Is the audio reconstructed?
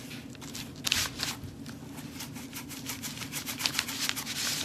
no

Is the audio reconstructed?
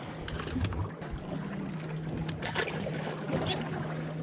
no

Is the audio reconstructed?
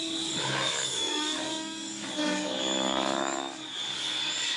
yes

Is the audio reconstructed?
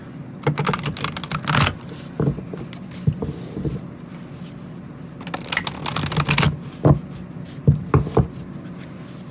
no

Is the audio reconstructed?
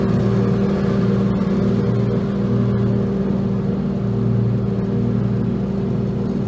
no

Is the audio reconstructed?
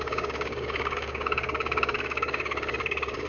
yes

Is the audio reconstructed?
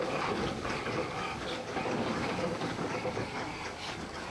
yes